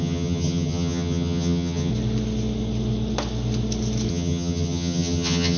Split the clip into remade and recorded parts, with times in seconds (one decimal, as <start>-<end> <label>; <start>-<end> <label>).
0.0-1.9 remade; 1.9-4.1 recorded; 4.1-5.6 remade